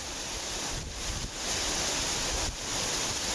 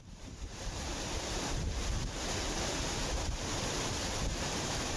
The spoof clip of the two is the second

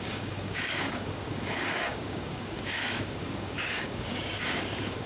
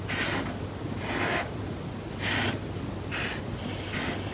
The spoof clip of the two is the first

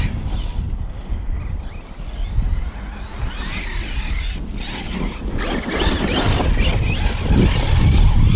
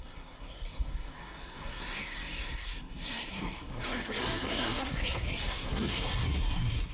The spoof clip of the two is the second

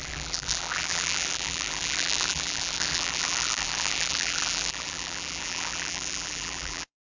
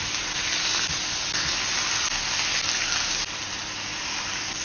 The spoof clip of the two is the first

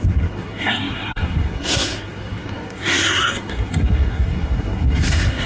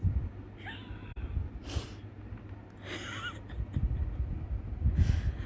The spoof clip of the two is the first